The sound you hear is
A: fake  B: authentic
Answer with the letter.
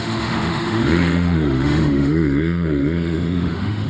A